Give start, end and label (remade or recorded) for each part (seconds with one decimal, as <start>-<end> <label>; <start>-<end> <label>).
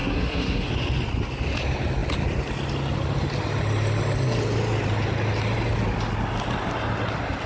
0.0-0.7 remade; 0.7-7.5 recorded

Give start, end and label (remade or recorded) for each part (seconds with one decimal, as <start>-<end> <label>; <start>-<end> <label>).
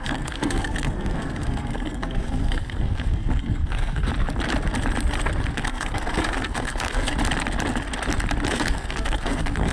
0.0-4.1 remade; 4.1-5.5 recorded; 5.5-7.1 remade; 7.1-8.5 recorded; 8.5-9.7 remade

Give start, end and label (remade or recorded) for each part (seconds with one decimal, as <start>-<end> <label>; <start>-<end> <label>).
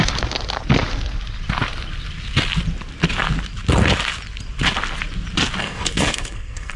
0.0-5.6 recorded; 5.6-6.8 remade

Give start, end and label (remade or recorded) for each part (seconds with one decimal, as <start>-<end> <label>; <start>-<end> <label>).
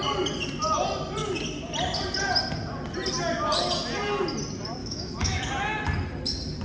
0.0-4.8 recorded; 4.8-5.4 remade; 5.4-6.6 recorded